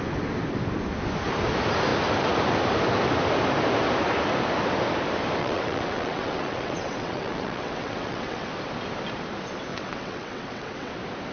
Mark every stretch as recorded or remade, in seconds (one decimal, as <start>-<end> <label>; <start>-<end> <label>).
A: 0.0-5.4 recorded; 5.4-8.5 remade; 8.5-9.7 recorded; 9.7-10.9 remade; 10.9-11.3 recorded

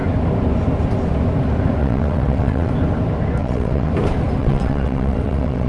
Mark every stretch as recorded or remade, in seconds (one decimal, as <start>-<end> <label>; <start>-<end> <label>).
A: 0.0-1.8 recorded; 1.8-2.7 remade; 2.7-3.4 recorded; 3.4-3.9 remade; 3.9-4.4 recorded; 4.4-5.7 remade

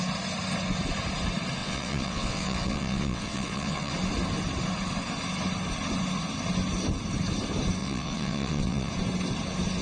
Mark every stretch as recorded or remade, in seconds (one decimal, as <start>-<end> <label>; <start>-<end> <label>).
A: 0.0-1.6 recorded; 1.6-3.9 remade; 3.9-7.8 recorded; 7.8-8.9 remade; 8.9-9.8 recorded